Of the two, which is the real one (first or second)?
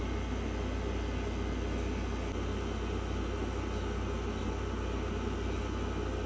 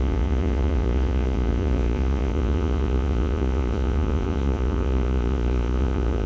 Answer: first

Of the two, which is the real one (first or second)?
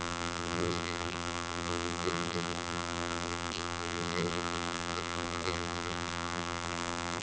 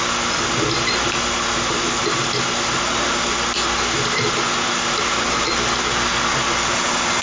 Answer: second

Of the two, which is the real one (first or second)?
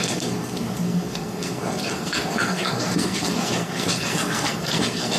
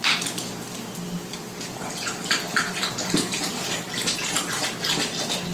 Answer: second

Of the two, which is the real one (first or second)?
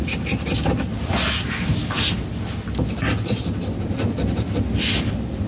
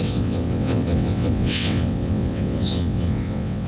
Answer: first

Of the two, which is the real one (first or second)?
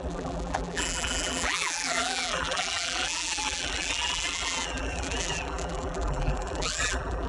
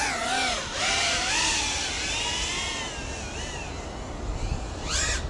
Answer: second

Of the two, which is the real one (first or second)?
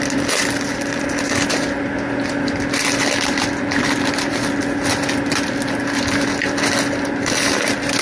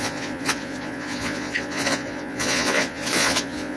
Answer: first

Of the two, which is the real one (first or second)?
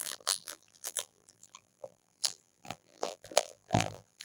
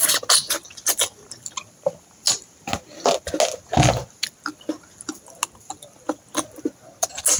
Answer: second